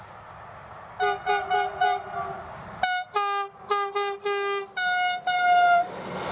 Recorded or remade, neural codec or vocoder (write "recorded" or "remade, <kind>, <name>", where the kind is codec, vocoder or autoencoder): recorded